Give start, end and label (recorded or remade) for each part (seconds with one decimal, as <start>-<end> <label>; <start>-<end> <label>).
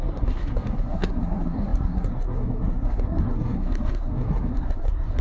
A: 0.0-5.2 remade